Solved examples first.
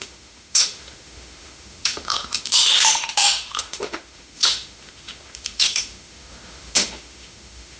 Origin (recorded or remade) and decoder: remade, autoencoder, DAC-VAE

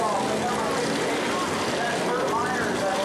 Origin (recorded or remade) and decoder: recorded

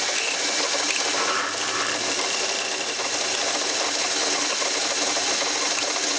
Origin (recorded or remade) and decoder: recorded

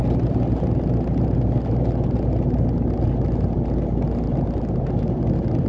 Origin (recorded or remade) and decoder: recorded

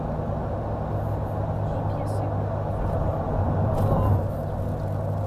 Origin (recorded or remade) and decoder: recorded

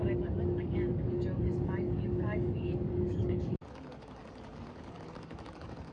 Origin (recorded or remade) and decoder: remade, codec, DAC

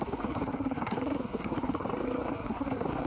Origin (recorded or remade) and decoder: remade, codec, SNAC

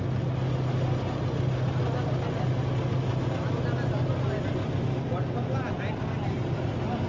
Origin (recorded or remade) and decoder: recorded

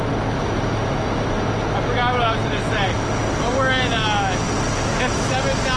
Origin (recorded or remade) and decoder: recorded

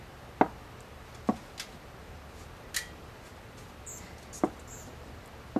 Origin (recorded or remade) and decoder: recorded